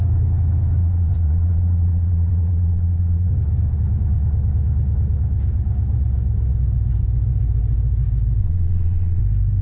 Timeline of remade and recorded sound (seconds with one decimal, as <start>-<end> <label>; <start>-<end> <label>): 0.0-0.8 recorded; 0.8-3.3 remade; 3.3-8.4 recorded; 8.4-9.2 remade; 9.2-9.6 recorded